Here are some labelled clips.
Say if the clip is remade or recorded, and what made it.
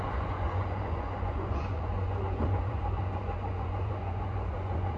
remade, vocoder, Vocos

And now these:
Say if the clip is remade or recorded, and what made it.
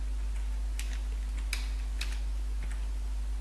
recorded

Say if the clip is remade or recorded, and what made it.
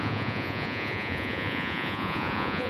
remade, vocoder, Vocos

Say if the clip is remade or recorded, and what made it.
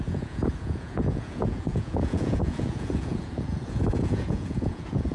remade, vocoder, Vocos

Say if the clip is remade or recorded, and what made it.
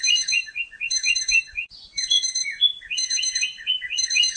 remade, vocoder, Vocos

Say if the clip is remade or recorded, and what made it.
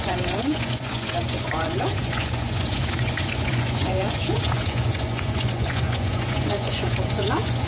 remade, vocoder, Vocos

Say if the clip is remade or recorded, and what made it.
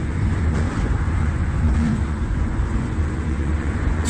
remade, vocoder, Vocos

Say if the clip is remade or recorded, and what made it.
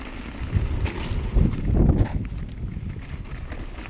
recorded